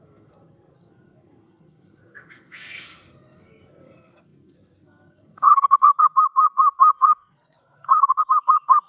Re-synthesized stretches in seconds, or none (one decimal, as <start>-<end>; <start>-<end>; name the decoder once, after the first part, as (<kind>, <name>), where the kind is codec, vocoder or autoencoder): 0.0-8.9 (codec, SNAC)